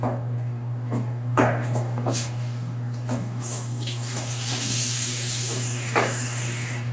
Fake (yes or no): yes